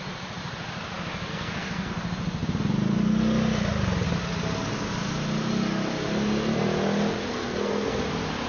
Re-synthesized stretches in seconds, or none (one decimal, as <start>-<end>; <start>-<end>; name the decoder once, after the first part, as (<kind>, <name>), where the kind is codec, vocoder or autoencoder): 1.3-1.9 (codec, SNAC); 7.3-8.0